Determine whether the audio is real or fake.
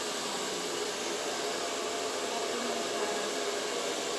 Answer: real